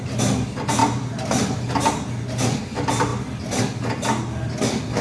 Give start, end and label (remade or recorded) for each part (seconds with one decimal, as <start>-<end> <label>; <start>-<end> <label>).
0.0-5.0 recorded